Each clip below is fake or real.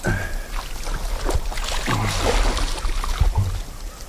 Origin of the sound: real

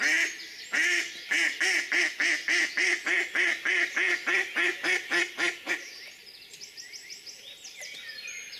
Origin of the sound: real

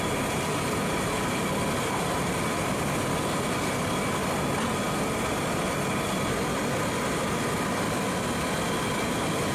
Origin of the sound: real